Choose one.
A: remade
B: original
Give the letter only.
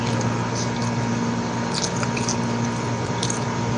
B